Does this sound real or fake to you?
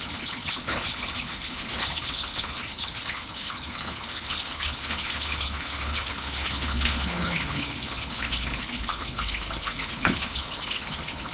fake